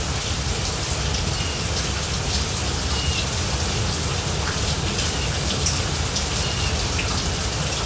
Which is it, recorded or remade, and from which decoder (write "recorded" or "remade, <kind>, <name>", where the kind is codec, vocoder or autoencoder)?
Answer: recorded